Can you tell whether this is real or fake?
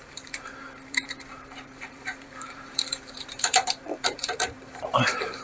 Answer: fake